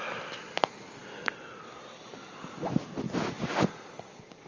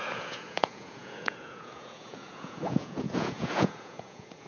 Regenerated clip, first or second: second